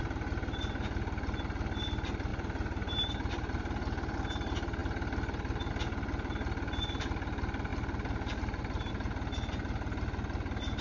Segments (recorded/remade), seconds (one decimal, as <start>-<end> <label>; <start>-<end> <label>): 0.0-2.3 recorded; 2.3-3.3 remade; 3.3-7.7 recorded; 7.7-8.9 remade; 8.9-10.8 recorded